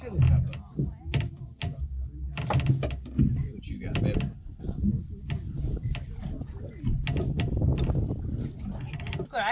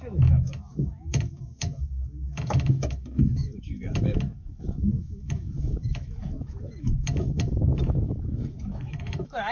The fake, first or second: second